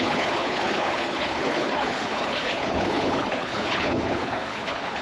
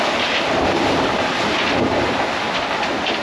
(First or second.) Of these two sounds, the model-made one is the first